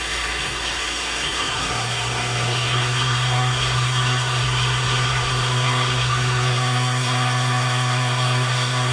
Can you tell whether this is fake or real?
fake